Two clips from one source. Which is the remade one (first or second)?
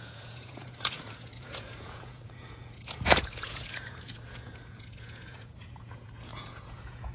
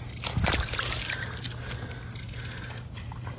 first